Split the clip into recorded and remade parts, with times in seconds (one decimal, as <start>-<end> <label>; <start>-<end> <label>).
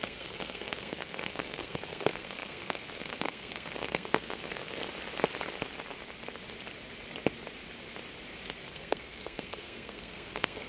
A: 0.0-4.8 remade; 4.8-8.6 recorded; 8.6-10.7 remade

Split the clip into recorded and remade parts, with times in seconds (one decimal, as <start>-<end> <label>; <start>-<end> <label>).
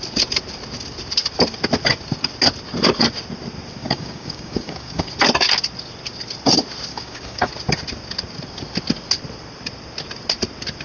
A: 0.0-3.8 recorded; 3.8-5.1 remade; 5.1-6.9 recorded; 6.9-7.5 remade; 7.5-10.8 recorded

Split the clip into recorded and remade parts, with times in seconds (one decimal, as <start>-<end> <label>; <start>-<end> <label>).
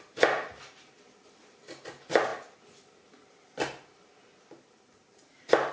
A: 0.0-5.7 recorded